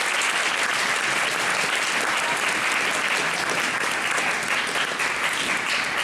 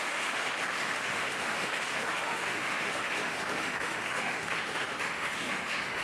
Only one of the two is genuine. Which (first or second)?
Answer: first